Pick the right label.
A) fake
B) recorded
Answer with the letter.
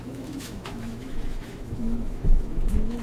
A